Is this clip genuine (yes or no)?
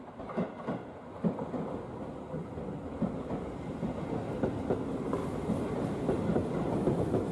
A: yes